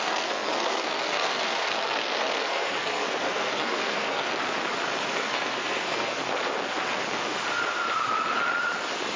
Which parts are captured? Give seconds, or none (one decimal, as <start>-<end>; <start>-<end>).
4.3-5.1; 6.2-9.2